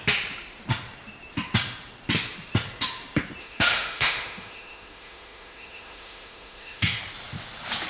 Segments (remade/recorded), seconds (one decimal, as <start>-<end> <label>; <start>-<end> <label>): 0.0-3.4 recorded; 3.4-7.0 remade; 7.0-7.9 recorded